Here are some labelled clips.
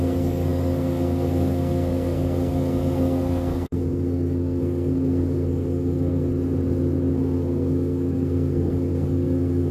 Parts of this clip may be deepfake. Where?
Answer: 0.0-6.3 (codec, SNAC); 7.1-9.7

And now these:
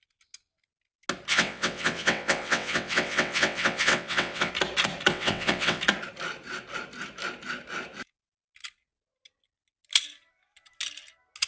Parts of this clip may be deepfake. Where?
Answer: 1.3-4.5 (vocoder, WaveNeXt); 5.1-5.8

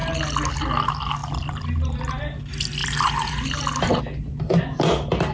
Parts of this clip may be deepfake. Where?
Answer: 2.8-4.0 (vocoder, BigVGAN v2)

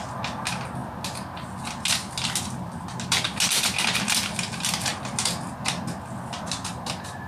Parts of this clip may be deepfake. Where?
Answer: none

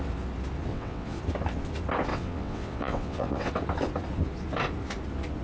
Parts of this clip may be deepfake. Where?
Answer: 0.7-1.2 (vocoder, WaveNeXt); 2.1-3.5

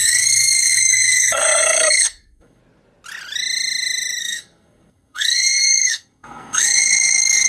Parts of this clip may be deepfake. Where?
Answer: 0.0-2.6 (codec, SNAC); 4.2-7.5

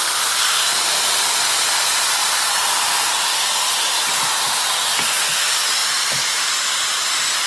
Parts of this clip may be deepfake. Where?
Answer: 2.2-3.1 (vocoder, BigVGAN v2)